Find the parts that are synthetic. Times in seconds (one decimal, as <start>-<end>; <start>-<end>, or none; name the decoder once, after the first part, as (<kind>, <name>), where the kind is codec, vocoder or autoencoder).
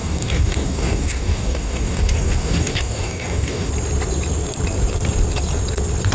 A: 0.0-3.7 (codec, DAC)